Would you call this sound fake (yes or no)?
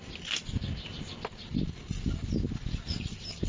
no